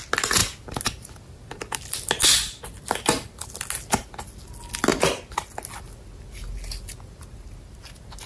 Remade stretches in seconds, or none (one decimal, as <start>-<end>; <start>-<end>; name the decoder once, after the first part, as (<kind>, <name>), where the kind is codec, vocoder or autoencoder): none